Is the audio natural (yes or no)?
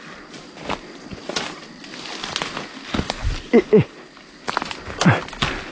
yes